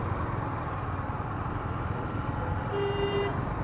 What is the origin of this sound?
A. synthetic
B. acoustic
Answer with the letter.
B